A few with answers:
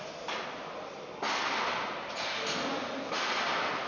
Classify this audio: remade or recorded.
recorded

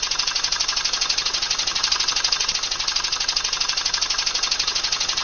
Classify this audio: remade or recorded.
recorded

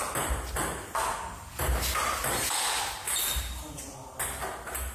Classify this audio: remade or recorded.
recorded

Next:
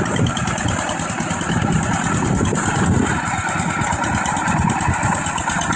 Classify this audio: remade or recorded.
recorded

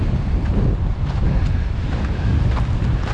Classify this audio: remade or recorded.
remade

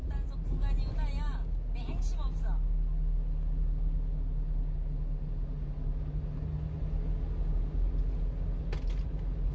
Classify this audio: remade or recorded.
recorded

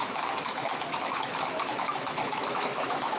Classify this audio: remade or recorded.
remade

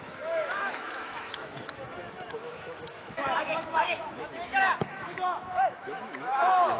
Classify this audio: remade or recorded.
remade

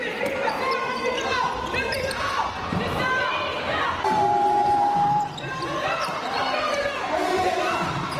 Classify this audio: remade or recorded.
recorded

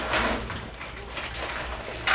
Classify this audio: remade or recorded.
recorded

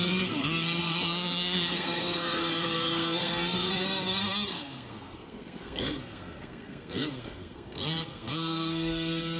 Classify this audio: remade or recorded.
remade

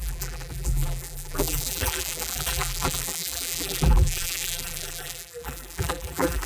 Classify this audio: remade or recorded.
remade